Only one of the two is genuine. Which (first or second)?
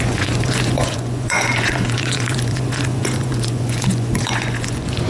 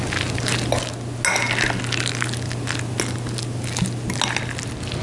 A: second